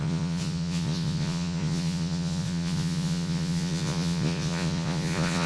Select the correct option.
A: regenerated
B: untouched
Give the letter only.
A